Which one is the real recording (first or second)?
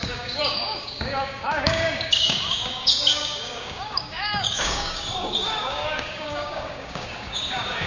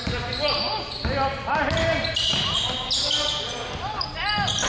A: second